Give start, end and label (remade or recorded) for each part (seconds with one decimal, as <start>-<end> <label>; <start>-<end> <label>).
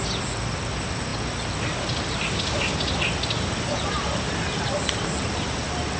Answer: 0.0-6.0 recorded